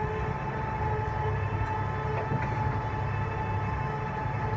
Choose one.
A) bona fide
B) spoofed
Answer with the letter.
A